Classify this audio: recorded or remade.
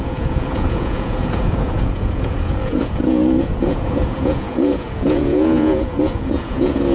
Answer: remade